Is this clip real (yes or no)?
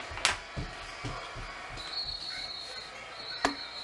yes